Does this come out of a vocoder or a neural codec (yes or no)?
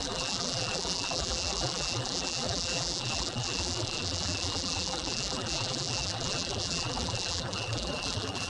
yes